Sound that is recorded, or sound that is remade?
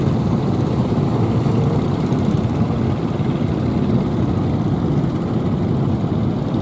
recorded